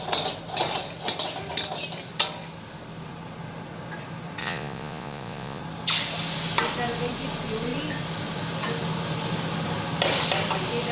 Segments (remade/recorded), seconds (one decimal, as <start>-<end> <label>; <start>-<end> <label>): 0.0-4.4 recorded; 4.4-5.6 remade; 5.6-10.9 recorded